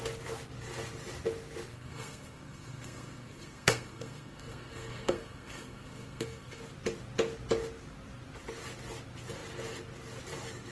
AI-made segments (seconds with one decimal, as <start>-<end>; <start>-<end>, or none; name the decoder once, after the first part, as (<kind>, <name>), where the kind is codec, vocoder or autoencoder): 1.7-6.6 (codec, SNAC)